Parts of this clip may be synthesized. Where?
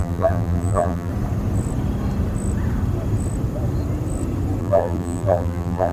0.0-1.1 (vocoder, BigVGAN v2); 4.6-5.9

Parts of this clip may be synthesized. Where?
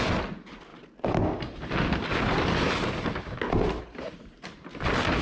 none